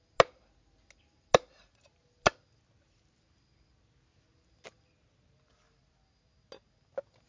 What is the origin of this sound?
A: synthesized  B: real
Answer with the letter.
B